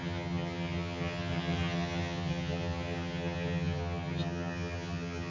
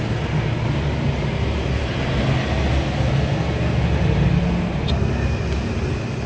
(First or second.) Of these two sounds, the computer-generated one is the first